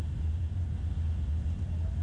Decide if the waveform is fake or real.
real